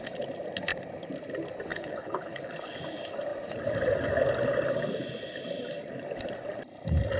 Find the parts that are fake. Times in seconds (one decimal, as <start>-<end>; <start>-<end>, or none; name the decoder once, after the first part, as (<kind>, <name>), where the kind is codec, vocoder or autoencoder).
1.7-2.8 (codec, HILCodec)